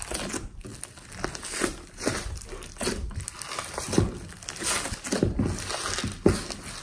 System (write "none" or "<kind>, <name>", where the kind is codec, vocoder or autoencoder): none